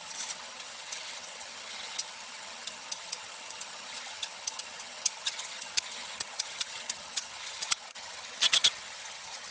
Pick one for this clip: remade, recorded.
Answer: remade